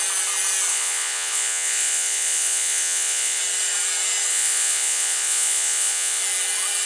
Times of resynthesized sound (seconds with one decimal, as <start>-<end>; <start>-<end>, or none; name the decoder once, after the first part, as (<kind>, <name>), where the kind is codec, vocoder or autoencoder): 0.7-3.4 (vocoder, Vocos); 4.3-6.2